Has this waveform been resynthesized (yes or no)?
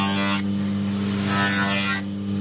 no